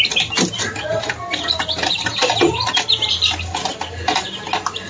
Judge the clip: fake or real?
real